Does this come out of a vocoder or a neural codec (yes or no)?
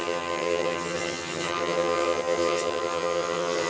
yes